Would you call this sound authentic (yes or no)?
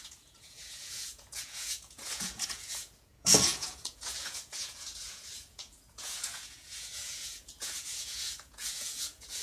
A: no